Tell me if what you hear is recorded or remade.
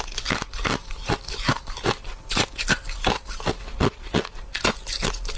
recorded